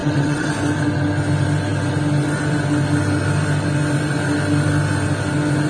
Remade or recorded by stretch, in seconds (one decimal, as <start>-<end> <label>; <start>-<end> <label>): 0.0-0.5 remade; 0.5-5.7 recorded